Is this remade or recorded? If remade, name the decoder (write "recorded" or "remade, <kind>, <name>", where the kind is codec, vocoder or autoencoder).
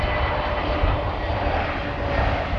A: recorded